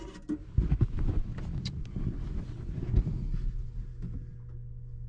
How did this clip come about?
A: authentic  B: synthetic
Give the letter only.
A